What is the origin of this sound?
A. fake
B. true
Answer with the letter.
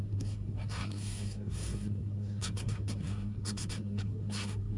A